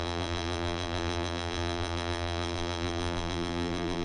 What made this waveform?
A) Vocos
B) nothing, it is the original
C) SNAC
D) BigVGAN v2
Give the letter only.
D